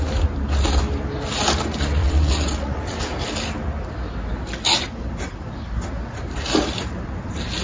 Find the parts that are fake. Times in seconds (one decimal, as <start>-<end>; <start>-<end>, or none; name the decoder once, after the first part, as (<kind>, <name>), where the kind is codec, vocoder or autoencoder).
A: 2.0-3.0 (vocoder, WaveNeXt)